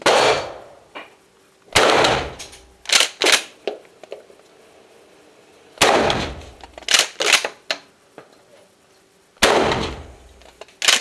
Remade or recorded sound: recorded